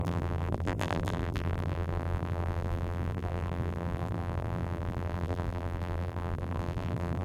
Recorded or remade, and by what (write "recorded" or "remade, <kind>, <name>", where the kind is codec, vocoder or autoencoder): remade, vocoder, BigVGAN v2